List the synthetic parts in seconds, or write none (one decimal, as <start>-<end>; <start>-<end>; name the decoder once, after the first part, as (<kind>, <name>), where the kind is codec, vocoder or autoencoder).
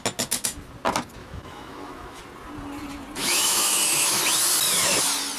1.2-2.2 (autoencoder, DAC-VAE); 3.2-4.2